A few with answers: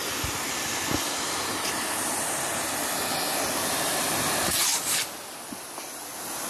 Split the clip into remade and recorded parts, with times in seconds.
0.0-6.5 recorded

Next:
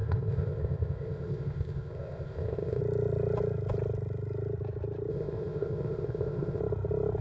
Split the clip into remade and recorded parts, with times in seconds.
0.0-2.8 remade; 2.8-5.1 recorded; 5.1-6.6 remade; 6.6-7.2 recorded

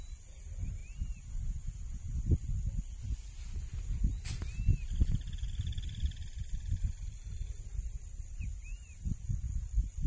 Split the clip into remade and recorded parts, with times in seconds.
0.0-10.1 recorded

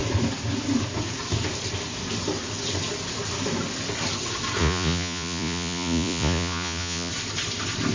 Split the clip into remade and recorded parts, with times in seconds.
0.0-4.6 recorded; 4.6-7.1 remade; 7.1-7.9 recorded

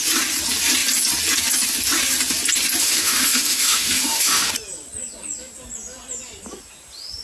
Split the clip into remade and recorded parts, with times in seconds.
0.0-2.8 recorded; 2.8-4.5 remade; 4.5-7.2 recorded

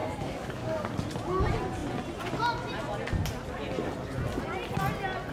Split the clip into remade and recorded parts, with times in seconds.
0.0-0.9 remade; 0.9-5.3 recorded

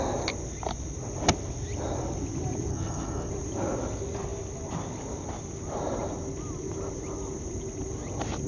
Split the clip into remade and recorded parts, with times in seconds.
0.0-2.7 recorded; 2.7-3.3 remade; 3.3-8.5 recorded